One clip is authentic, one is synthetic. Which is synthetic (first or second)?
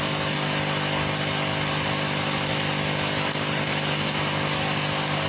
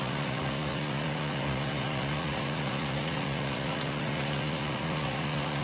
second